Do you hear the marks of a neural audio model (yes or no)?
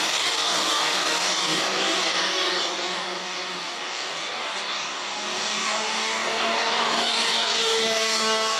yes